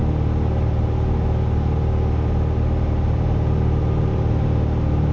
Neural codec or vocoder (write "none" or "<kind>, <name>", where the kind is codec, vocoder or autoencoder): none